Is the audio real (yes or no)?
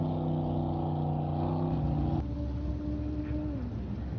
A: yes